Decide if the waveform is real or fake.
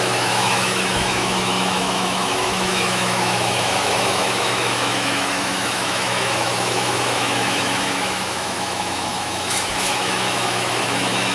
fake